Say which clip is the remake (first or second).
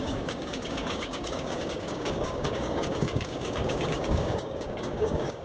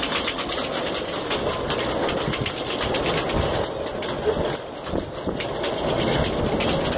first